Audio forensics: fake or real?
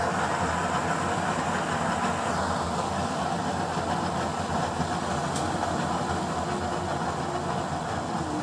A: real